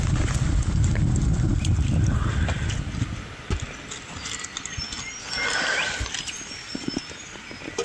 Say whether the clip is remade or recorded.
recorded